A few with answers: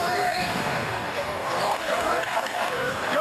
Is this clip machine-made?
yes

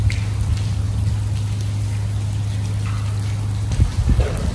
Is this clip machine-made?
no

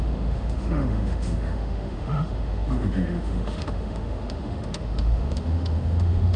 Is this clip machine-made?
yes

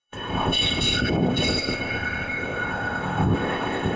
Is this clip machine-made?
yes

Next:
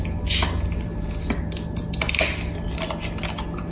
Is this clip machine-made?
no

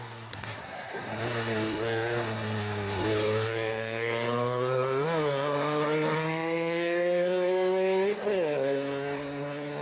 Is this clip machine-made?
yes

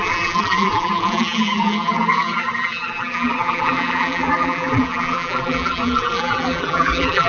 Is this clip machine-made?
yes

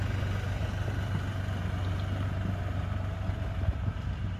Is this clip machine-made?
no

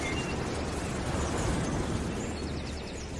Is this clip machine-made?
no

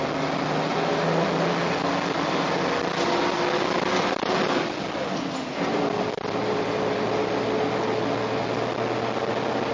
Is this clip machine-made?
no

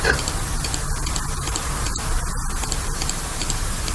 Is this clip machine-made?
yes